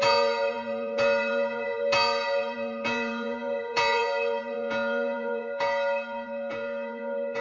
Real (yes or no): no